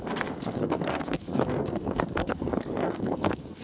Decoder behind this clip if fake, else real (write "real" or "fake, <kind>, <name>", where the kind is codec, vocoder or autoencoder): fake, codec, SNAC